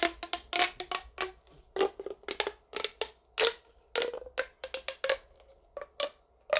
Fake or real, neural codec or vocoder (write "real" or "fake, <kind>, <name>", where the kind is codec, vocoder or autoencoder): real